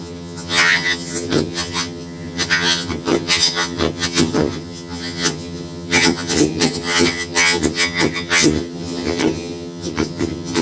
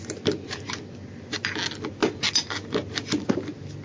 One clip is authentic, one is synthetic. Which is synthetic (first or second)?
first